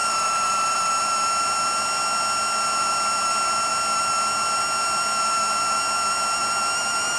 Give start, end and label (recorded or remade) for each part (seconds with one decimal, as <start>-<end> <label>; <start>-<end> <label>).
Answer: 0.0-0.9 remade; 0.9-7.2 recorded

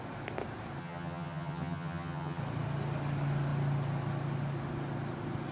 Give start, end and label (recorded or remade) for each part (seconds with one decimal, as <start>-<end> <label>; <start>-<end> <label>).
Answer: 0.0-0.8 recorded; 0.8-2.4 remade; 2.4-5.5 recorded

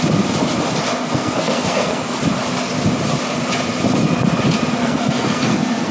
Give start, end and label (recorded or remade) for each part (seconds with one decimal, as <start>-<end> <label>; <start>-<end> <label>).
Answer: 0.0-0.8 recorded; 0.8-2.2 remade; 2.2-4.8 recorded; 4.8-5.9 remade

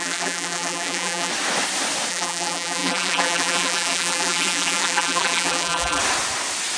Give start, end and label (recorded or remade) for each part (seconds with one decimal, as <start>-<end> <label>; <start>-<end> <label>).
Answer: 0.0-1.3 remade; 1.3-2.1 recorded; 2.1-6.0 remade; 6.0-6.8 recorded